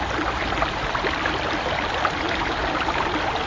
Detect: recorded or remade recorded